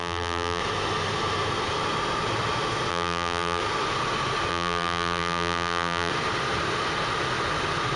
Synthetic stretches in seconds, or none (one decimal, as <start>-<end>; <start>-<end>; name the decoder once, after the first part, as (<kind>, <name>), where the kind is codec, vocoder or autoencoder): 0.0-0.6 (vocoder, BigVGAN v2); 2.9-3.6; 4.5-6.1